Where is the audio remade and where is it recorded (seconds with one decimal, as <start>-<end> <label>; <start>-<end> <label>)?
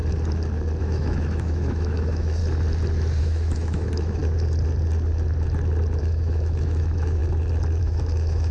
0.0-0.8 recorded; 0.8-2.4 remade; 2.4-3.2 recorded; 3.2-4.2 remade; 4.2-6.0 recorded; 6.0-7.2 remade; 7.2-7.8 recorded; 7.8-8.5 remade